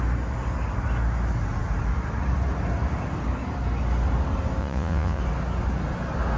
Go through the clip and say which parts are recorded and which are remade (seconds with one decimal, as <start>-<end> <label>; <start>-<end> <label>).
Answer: 0.0-4.6 recorded; 4.6-5.2 remade; 5.2-6.4 recorded